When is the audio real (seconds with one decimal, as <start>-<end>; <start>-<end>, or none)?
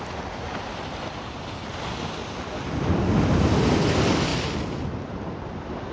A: 0.0-5.9